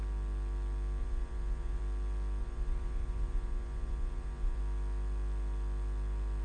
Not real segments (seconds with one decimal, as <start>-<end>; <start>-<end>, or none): 1.0-1.8; 2.4-4.6